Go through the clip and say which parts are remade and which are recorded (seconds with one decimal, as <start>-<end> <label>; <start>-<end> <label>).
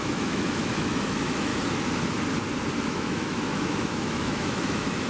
0.0-1.5 remade; 1.5-2.8 recorded; 2.8-5.1 remade